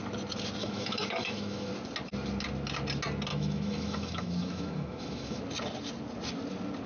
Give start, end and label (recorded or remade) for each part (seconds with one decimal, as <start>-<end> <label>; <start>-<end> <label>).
0.0-0.6 recorded; 0.6-1.7 remade; 1.7-3.3 recorded; 3.3-5.4 remade; 5.4-6.9 recorded